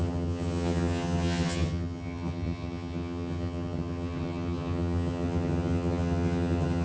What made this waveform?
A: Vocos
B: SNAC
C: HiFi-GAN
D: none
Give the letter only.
C